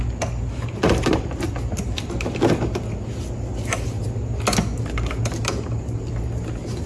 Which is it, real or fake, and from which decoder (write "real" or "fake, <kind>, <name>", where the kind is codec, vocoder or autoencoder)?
real